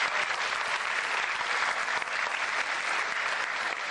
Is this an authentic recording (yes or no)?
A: yes